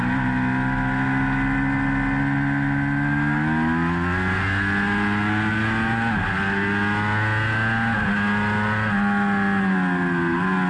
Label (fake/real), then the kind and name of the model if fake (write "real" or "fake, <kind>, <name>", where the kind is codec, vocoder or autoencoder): real